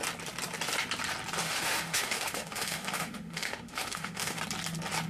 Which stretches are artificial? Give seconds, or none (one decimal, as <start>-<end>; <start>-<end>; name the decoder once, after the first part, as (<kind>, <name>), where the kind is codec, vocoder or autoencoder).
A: 1.4-4.4 (autoencoder, DAC-VAE)